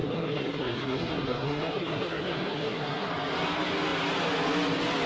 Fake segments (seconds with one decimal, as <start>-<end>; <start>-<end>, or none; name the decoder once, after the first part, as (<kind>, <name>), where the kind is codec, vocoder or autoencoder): 0.0-3.1 (codec, SNAC)